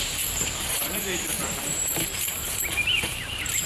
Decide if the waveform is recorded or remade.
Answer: remade